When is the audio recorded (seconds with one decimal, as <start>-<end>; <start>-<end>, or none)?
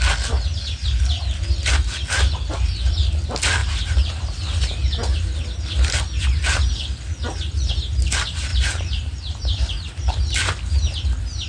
0.0-3.6; 4.4-8.5; 10.2-11.5